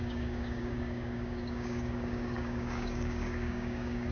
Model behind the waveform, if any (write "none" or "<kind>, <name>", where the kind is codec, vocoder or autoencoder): codec, DAC